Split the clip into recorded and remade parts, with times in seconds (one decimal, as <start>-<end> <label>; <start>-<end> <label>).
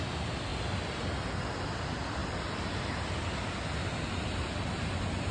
0.0-5.3 recorded